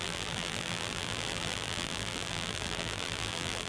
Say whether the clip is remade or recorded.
remade